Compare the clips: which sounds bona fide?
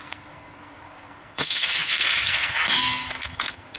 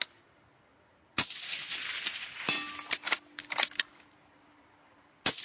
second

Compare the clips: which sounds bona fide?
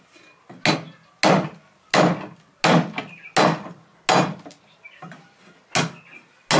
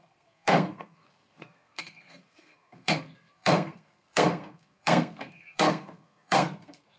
first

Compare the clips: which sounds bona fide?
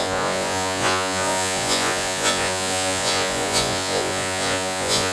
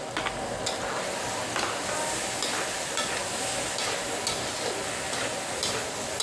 second